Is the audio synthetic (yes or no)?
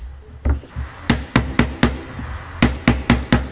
no